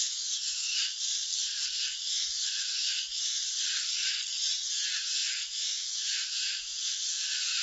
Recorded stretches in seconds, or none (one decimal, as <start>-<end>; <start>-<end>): 0.7-2.0; 3.4-4.7